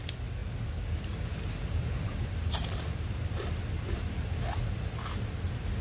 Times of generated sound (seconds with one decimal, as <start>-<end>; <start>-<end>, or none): 1.3-4.8

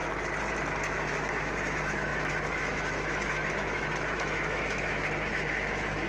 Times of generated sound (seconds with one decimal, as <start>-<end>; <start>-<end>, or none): 0.8-6.1

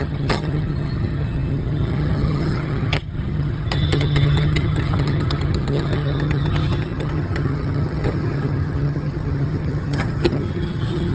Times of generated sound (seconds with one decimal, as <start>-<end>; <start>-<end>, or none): 0.0-11.1

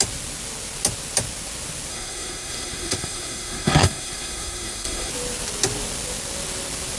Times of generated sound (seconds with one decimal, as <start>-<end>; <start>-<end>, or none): 1.9-5.1

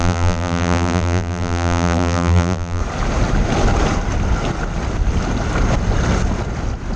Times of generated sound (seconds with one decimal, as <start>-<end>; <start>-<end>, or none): 0.0-2.8